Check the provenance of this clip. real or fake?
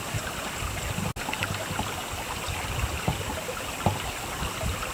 real